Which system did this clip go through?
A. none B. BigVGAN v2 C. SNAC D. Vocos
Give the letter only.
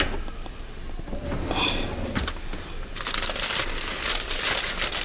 A